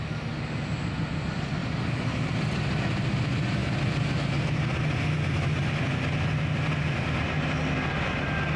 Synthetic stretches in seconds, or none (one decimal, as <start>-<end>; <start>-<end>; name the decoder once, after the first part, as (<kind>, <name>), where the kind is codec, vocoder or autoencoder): 1.6-2.4 (vocoder, BigVGAN v2)